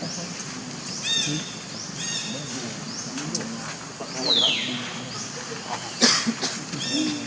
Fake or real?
real